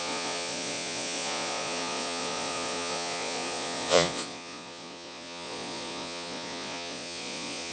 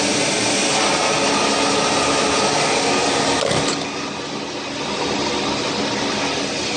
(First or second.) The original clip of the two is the second